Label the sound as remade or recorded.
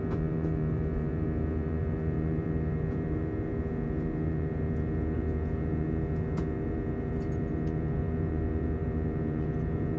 remade